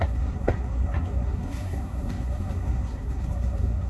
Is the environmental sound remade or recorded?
remade